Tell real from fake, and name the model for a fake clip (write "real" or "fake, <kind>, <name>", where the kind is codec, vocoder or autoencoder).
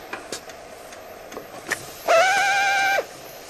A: real